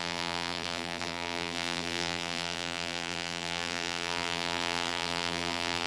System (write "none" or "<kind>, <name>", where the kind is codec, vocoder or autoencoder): vocoder, BigVGAN v2